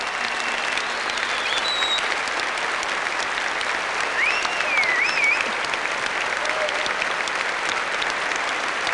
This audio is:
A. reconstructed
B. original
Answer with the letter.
B